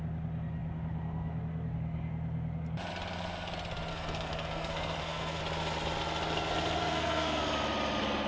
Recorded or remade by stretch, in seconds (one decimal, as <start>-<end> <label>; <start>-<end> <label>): 0.0-3.9 recorded; 3.9-5.4 remade; 5.4-6.8 recorded; 6.8-7.4 remade; 7.4-8.3 recorded